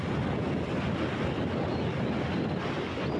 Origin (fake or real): real